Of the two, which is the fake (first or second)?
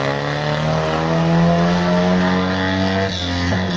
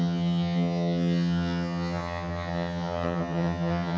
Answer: second